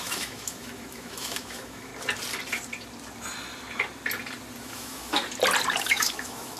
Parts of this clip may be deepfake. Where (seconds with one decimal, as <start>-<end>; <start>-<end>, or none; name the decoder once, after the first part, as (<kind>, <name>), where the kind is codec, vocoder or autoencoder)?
0.0-1.9 (autoencoder, DAC-VAE); 4.6-5.2; 5.8-6.6